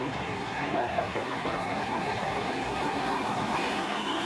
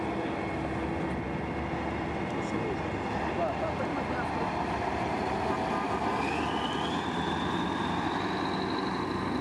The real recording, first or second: second